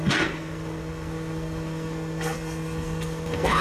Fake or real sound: fake